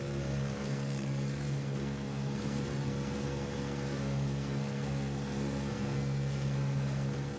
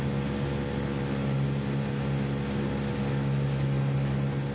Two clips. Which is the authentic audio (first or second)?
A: second